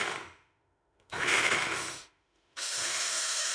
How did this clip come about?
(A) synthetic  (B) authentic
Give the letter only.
A